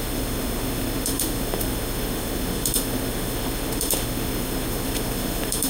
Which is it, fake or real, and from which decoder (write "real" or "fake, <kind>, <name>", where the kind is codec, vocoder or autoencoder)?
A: fake, autoencoder, DAC-VAE